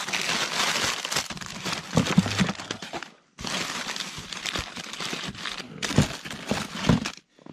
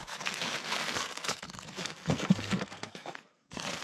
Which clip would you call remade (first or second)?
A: second